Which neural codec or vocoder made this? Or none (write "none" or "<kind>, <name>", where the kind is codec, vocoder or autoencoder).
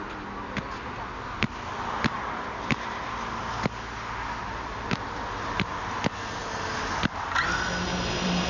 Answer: none